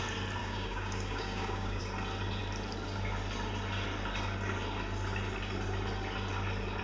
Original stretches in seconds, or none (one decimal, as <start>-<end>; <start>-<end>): 0.0-0.4; 1.8-6.8